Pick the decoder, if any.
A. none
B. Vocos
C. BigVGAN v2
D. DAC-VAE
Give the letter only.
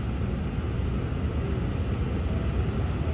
A